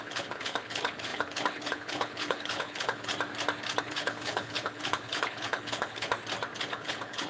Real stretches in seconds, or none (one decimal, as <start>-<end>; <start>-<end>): 3.1-3.8; 6.1-6.6